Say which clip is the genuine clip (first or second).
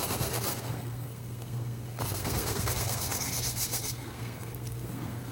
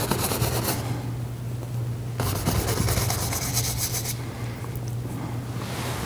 second